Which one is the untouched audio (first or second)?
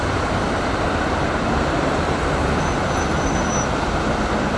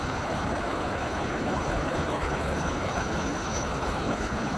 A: first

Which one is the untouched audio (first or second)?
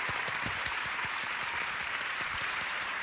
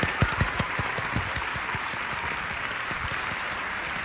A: second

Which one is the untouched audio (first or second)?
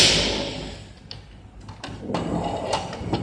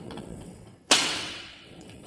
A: first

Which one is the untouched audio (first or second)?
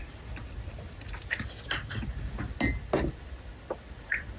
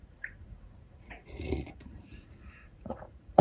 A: first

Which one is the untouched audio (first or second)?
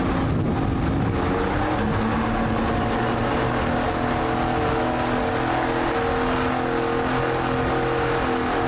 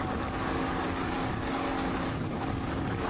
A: first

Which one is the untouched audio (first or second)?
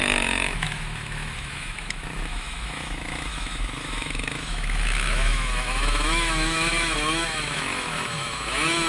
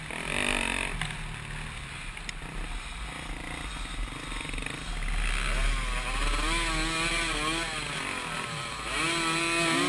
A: second